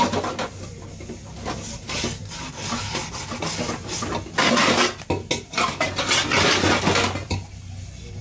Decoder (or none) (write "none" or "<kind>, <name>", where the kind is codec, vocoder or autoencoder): none